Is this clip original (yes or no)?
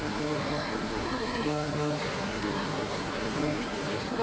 no